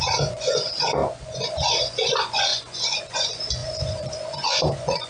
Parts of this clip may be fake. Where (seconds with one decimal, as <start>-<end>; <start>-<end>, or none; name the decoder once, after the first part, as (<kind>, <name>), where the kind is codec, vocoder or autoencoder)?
0.0-5.1 (vocoder, Vocos)